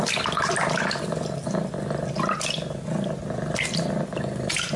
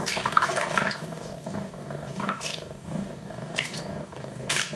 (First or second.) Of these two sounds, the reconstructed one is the second